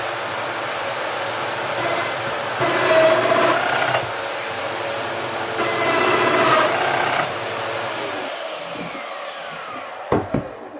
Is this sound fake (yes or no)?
no